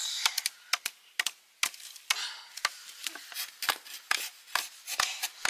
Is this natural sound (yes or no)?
yes